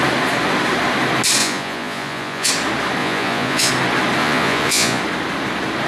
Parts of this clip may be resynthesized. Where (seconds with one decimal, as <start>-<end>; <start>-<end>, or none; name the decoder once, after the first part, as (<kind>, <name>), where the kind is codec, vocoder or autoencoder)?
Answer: 1.4-2.5 (vocoder, Vocos); 3.0-3.7; 4.2-5.0